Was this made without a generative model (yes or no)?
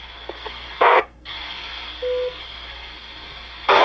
no